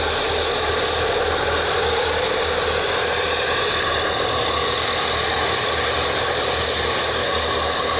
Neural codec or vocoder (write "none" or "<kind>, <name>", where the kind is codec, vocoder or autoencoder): none